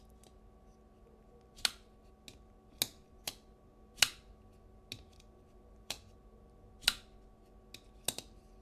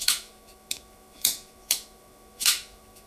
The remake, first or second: second